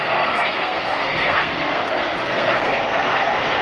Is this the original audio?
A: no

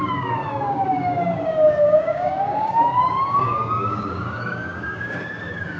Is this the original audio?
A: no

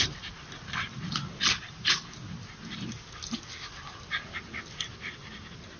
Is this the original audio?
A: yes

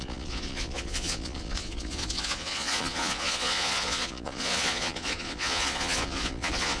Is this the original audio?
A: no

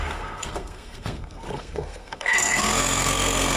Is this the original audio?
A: no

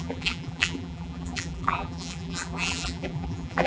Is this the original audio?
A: no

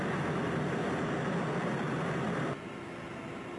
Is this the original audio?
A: yes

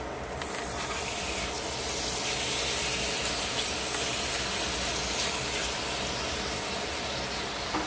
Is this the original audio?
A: yes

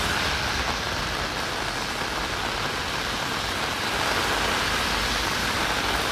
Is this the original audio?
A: yes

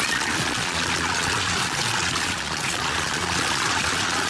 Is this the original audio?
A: no